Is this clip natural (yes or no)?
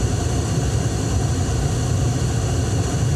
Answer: yes